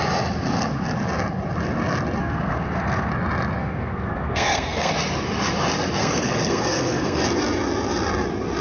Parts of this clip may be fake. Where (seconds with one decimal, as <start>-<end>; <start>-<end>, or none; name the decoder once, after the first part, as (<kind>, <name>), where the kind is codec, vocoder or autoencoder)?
2.2-3.1 (codec, SNAC); 3.6-4.9; 6.0-7.2

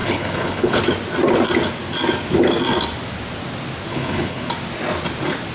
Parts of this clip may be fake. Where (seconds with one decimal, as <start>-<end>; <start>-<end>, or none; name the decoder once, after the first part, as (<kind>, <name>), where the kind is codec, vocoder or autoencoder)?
0.0-0.8 (codec, HILCodec); 3.9-4.5

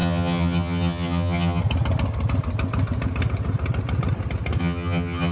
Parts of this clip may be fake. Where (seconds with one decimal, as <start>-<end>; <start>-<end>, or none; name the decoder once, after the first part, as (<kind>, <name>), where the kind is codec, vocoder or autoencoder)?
0.0-1.6 (vocoder, HiFi-GAN); 4.6-5.3

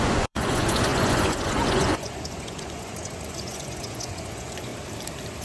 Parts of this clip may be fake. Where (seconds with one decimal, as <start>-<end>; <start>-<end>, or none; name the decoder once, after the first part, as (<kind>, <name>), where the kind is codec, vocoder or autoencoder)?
0.0-4.7 (vocoder, Vocos)

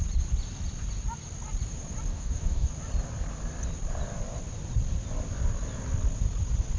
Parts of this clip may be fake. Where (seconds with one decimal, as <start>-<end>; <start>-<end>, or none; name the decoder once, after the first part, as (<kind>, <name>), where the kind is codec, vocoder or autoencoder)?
2.1-2.7 (codec, DAC)